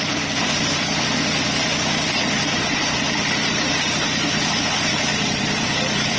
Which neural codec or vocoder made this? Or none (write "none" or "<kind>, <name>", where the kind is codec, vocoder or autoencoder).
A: vocoder, BigVGAN v2